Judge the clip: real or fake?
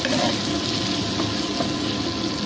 real